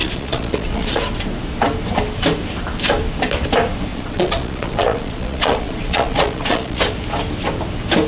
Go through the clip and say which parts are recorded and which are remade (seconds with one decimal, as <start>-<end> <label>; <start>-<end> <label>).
0.0-1.0 remade; 1.0-3.9 recorded; 3.9-6.8 remade; 6.8-8.1 recorded